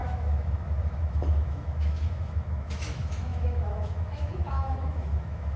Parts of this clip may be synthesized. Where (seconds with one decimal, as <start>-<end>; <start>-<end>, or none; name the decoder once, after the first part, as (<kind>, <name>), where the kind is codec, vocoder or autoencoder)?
0.0-5.6 (autoencoder, DAC-VAE)